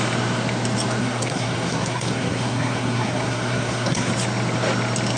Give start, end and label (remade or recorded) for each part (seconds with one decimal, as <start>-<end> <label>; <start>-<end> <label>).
0.0-1.0 recorded; 1.0-4.1 remade; 4.1-5.2 recorded